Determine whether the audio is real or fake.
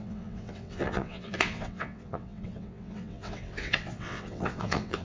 fake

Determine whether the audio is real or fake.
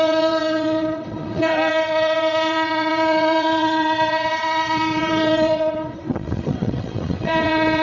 fake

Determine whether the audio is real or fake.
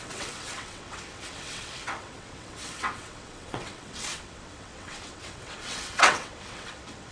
fake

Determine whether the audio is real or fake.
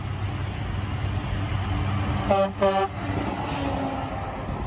real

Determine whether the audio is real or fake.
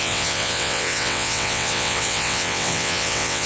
fake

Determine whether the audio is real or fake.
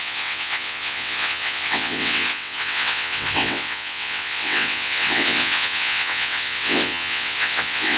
fake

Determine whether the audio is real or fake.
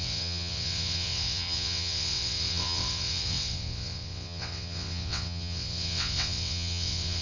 fake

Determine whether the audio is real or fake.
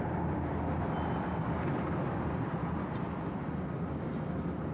real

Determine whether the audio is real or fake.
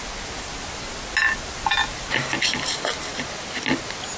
real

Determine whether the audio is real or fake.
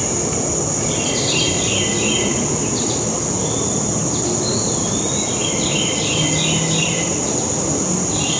real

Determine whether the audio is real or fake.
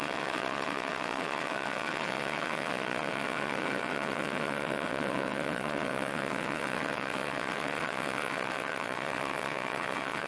fake